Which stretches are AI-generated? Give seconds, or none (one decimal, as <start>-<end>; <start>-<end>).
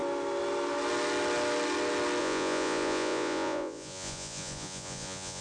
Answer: 2.2-5.4